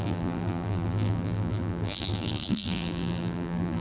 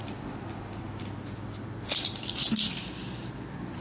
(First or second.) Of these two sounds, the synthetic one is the first